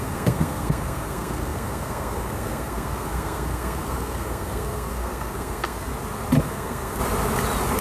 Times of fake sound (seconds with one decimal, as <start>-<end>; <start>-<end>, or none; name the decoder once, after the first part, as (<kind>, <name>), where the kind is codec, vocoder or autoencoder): 0.0-5.9 (codec, SNAC); 6.4-7.0